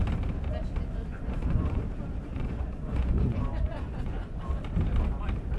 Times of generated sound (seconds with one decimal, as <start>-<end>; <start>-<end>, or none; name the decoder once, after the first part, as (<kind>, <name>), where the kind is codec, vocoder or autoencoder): 1.1-1.8 (vocoder, Vocos); 2.2-4.4